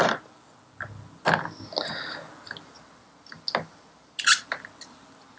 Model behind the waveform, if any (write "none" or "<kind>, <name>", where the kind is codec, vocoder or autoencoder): none